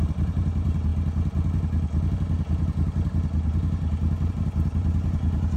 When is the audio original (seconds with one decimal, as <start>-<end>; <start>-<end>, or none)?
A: 0.9-4.3